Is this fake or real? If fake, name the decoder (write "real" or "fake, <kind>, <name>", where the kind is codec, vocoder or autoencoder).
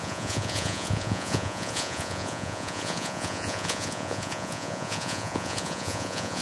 fake, vocoder, Vocos